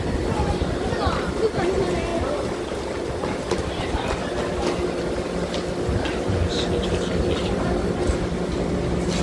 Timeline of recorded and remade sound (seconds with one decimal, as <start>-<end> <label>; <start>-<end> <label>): 0.0-9.2 recorded